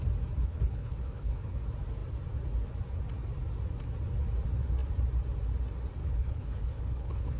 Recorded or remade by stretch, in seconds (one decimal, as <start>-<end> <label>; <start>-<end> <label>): 0.0-0.4 recorded; 0.4-1.6 remade; 1.6-6.0 recorded; 6.0-7.4 remade